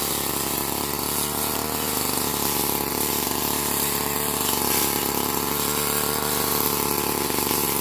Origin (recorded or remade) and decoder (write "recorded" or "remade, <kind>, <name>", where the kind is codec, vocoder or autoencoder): remade, vocoder, BigVGAN v2